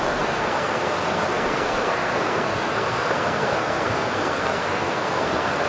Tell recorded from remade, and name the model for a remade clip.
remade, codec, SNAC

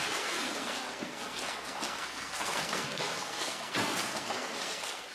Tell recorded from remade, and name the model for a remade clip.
remade, codec, SNAC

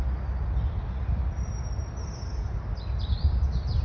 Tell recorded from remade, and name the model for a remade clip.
recorded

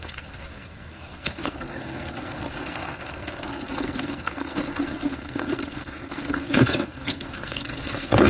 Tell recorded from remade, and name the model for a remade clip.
remade, codec, SNAC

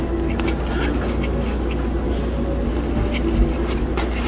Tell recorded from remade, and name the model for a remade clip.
recorded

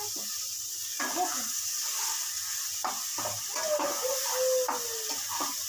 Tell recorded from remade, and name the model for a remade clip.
recorded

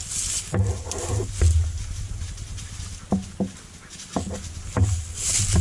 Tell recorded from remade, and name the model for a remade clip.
recorded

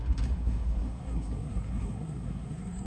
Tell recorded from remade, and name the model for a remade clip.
remade, codec, SNAC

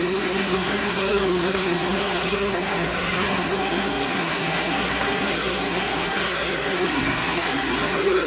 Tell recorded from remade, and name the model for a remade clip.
remade, codec, SNAC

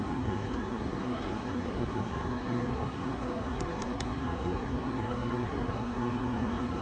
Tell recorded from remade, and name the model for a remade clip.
remade, codec, SNAC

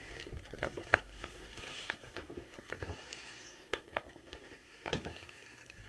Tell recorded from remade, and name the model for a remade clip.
remade, codec, SNAC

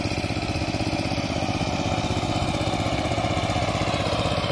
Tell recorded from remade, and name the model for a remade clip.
recorded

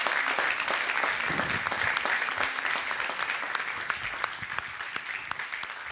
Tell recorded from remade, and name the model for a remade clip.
recorded